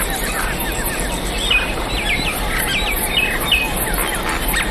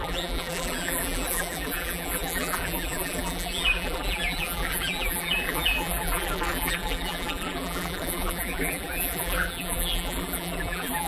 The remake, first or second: second